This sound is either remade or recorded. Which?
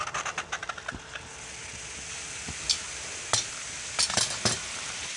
recorded